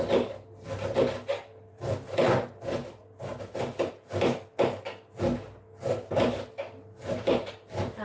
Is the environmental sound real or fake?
real